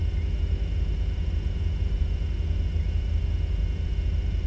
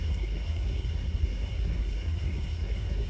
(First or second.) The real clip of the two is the first